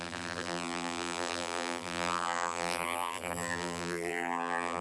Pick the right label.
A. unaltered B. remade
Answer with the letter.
B